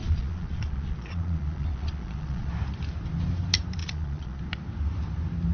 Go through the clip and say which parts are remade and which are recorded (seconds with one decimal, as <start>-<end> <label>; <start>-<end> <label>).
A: 0.0-2.5 remade; 2.5-3.8 recorded; 3.8-4.4 remade; 4.4-5.5 recorded